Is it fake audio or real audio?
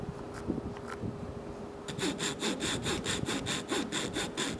real